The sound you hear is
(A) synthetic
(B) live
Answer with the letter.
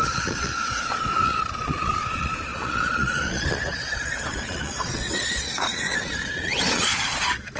A